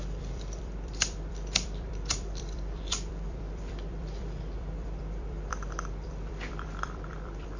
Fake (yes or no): yes